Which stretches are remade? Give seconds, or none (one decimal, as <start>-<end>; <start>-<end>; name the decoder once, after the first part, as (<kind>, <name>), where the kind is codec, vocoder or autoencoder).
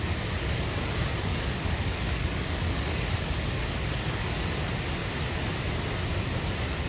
0.4-4.5 (codec, DAC)